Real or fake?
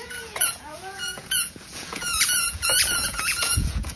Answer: fake